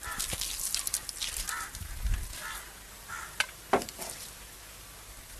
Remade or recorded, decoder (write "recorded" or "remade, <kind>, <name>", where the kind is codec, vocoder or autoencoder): recorded